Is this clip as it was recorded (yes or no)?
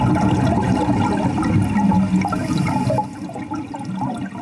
yes